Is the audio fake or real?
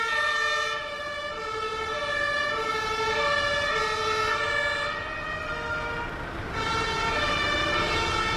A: real